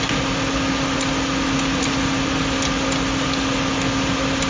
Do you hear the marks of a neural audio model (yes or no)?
no